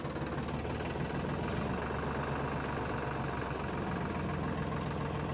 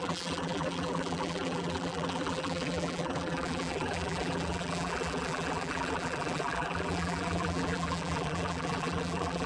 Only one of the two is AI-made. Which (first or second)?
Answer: second